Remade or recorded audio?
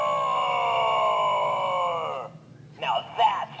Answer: recorded